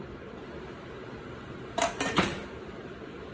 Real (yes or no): no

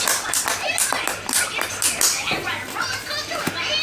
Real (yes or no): yes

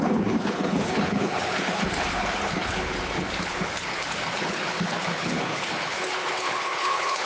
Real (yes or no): no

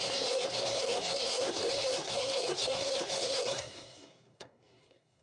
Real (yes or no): no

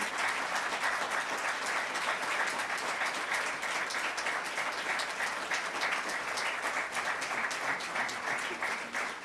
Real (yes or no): yes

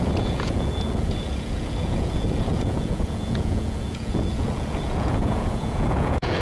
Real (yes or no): no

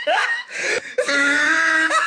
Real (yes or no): no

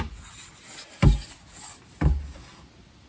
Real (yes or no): yes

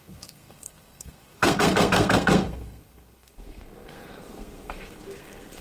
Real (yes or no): no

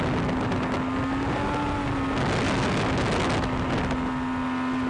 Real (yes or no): yes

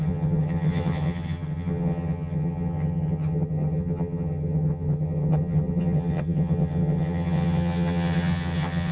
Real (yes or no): no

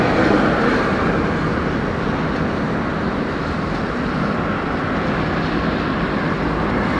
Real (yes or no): yes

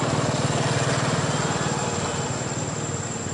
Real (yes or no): yes